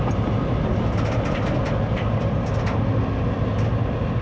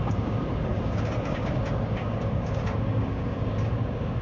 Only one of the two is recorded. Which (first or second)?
first